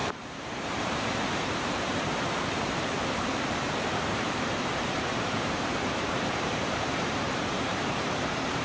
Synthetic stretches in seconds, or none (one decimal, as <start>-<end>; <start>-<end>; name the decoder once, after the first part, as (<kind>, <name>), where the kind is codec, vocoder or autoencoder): 0.0-8.6 (vocoder, BigVGAN v2)